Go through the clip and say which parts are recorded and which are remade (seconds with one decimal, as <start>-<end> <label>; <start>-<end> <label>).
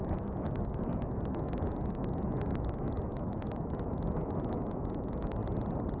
0.0-5.4 remade; 5.4-6.0 recorded